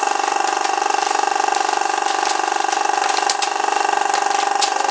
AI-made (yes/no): no